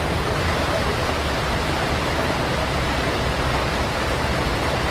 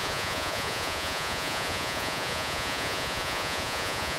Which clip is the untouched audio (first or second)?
first